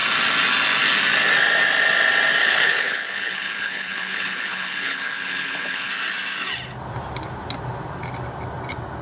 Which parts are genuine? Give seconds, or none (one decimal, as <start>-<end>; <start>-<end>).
0.0-2.4; 5.9-9.0